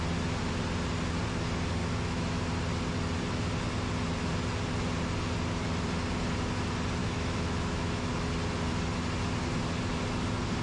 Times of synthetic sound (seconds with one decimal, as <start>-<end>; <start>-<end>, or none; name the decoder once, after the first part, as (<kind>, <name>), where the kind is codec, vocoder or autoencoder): 1.8-2.4 (autoencoder, DAC-VAE); 7.0-8.1